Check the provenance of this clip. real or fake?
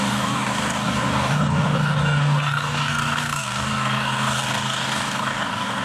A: fake